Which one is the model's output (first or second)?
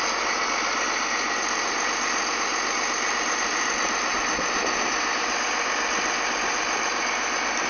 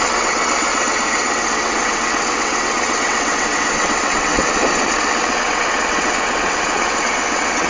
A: second